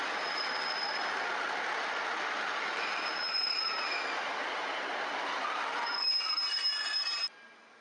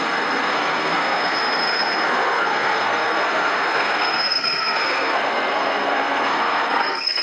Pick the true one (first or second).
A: first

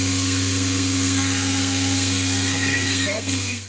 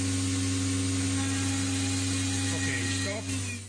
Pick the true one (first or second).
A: second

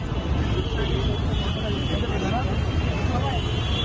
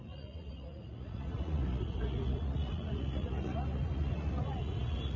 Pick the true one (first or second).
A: first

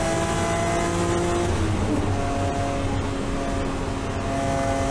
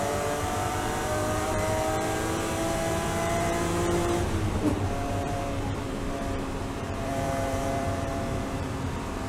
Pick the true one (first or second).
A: first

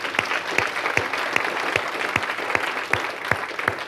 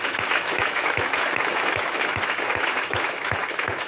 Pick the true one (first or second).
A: first